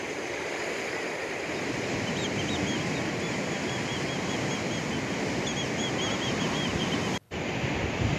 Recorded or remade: recorded